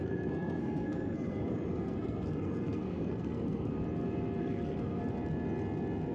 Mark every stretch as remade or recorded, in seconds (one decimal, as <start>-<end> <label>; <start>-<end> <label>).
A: 0.0-3.7 remade; 3.7-4.4 recorded; 4.4-5.0 remade; 5.0-6.1 recorded

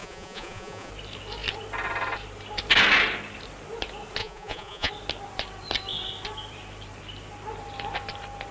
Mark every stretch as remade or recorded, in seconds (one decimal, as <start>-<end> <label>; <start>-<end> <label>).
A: 0.0-0.9 remade; 0.9-4.2 recorded; 4.2-4.9 remade; 4.9-8.5 recorded

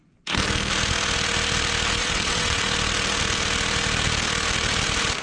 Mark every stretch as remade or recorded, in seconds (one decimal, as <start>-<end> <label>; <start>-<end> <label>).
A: 0.0-2.0 recorded; 2.0-2.6 remade; 2.6-5.2 recorded

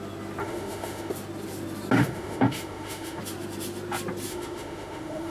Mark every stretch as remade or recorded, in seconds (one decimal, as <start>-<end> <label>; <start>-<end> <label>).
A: 0.0-0.4 recorded; 0.4-1.1 remade; 1.1-2.0 recorded; 2.0-3.2 remade; 3.2-4.3 recorded; 4.3-5.3 remade

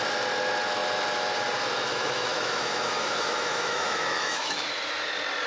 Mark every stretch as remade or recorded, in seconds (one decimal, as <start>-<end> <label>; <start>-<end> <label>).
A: 0.0-1.9 recorded; 1.9-4.7 remade; 4.7-5.5 recorded

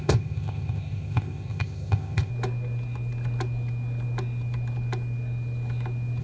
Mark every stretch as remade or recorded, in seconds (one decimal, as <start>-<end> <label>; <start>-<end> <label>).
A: 0.0-2.3 remade; 2.3-6.2 recorded